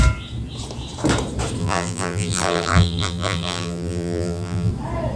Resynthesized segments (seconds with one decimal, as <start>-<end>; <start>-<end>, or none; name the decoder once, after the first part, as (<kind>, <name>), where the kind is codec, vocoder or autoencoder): 1.6-4.7 (vocoder, BigVGAN v2)